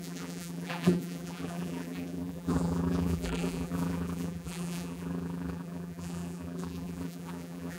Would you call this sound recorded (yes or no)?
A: no